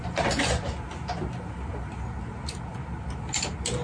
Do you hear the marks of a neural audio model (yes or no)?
no